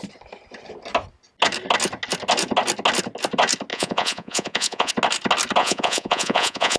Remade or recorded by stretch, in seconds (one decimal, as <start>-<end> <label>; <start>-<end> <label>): 0.0-3.7 recorded; 3.7-4.9 remade; 4.9-5.6 recorded; 5.6-6.8 remade